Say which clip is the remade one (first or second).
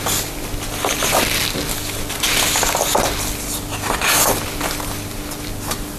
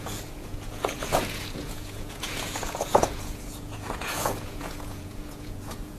second